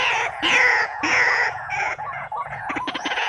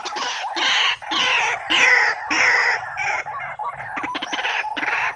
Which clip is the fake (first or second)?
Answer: first